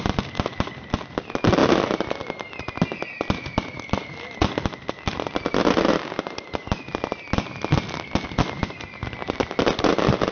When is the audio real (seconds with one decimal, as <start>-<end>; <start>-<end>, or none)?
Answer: 0.0-10.3